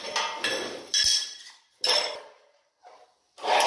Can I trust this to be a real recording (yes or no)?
yes